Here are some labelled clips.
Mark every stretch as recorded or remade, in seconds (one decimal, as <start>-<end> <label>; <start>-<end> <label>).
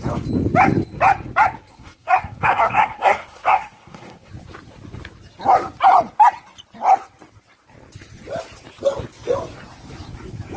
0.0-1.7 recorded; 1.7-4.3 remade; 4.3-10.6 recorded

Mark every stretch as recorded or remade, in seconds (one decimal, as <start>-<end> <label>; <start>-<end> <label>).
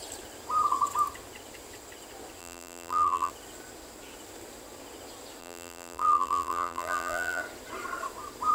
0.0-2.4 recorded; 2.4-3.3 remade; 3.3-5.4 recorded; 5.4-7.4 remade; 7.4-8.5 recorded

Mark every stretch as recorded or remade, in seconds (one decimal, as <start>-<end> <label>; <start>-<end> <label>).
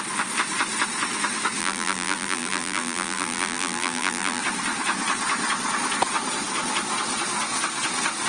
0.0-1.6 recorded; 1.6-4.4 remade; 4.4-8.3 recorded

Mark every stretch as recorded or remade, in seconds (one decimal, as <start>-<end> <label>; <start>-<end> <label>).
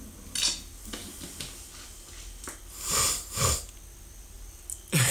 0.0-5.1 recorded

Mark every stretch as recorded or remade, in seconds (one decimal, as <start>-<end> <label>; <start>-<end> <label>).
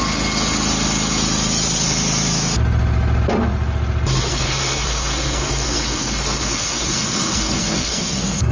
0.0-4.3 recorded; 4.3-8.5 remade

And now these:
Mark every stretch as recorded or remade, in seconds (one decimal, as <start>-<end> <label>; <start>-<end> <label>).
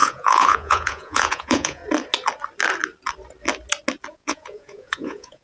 0.0-1.8 remade; 1.8-4.1 recorded; 4.1-5.4 remade